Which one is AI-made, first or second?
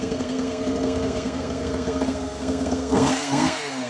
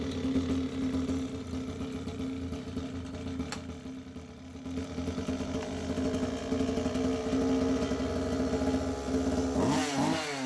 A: first